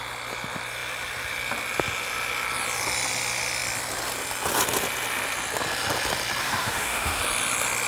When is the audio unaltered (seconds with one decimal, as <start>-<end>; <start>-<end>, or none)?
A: 0.0-6.4; 7.2-7.9